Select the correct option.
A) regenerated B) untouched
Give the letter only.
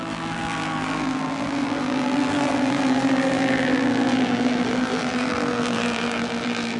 A